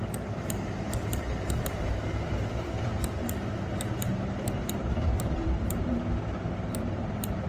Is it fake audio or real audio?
fake